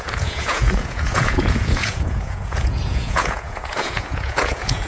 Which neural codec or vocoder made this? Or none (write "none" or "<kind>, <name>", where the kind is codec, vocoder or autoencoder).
vocoder, Vocos